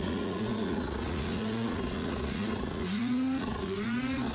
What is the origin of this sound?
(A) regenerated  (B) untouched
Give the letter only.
A